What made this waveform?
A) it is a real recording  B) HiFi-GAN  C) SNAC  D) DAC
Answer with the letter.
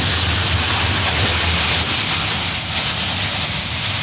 A